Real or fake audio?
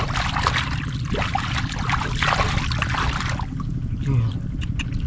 real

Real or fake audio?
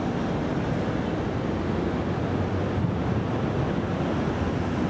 real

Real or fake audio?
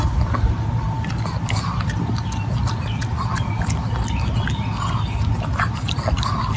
real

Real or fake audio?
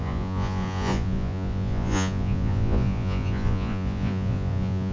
fake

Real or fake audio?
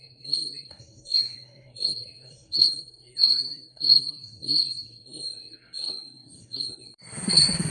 fake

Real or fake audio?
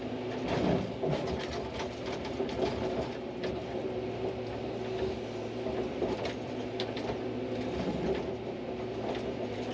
real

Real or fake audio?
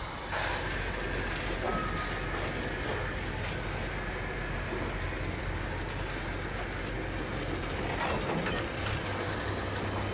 real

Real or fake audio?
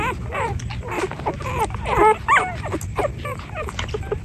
real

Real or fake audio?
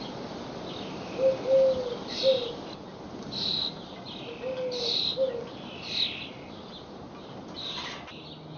real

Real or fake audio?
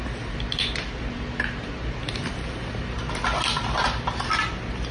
real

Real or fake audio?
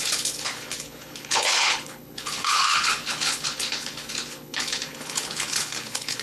fake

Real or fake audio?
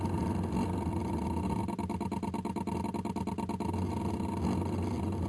real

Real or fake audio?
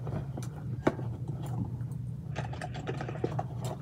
real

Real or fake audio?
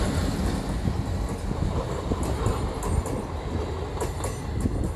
real